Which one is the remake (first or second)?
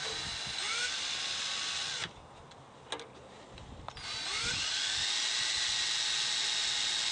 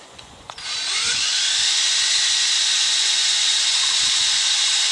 second